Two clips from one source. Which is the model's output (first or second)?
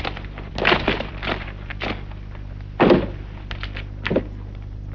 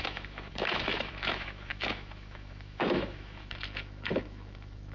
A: second